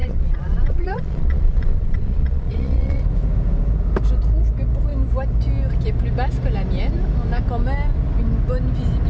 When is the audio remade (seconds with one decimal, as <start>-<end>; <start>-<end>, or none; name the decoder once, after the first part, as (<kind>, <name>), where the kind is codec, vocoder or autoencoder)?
0.0-3.0 (vocoder, Vocos)